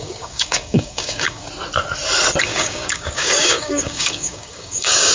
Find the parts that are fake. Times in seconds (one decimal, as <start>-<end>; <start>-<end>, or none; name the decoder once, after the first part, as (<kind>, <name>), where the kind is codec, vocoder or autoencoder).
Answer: 0.0-1.4 (codec, DAC); 2.4-5.1